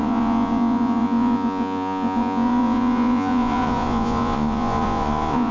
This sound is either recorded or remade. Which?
remade